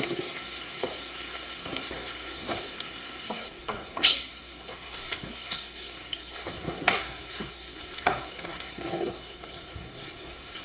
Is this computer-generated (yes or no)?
yes